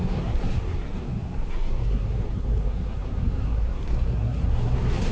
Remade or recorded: remade